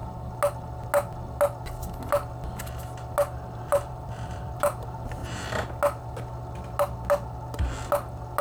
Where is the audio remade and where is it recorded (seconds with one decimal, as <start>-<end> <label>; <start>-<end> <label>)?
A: 0.0-3.6 recorded; 3.6-5.2 remade; 5.2-8.4 recorded